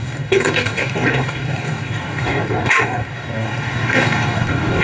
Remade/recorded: remade